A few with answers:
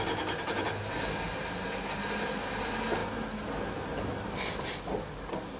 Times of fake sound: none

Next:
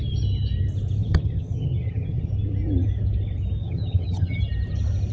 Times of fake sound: 1.0-2.3 (vocoder, HiFi-GAN); 3.6-4.4

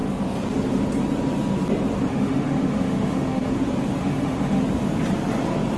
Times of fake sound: 2.1-3.5 (autoencoder, DAC-VAE); 4.0-4.6

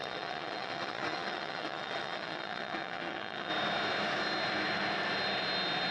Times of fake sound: 0.0-3.5 (vocoder, WaveNeXt)